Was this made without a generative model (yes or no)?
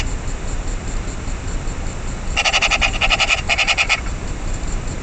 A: yes